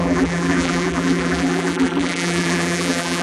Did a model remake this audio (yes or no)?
yes